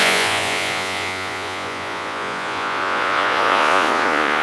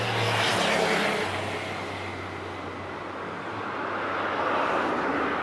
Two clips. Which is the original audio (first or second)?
second